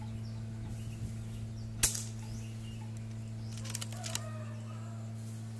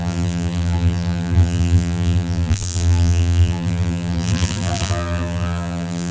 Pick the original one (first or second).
first